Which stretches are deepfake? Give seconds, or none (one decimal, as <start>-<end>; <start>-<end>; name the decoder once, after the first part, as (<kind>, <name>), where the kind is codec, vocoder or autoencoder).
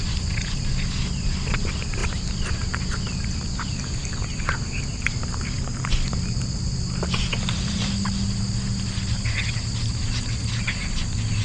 none